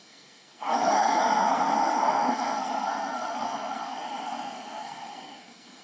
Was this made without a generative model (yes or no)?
no